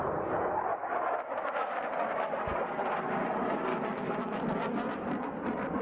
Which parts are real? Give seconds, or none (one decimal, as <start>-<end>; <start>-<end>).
0.0-0.7; 2.3-3.7; 4.5-5.8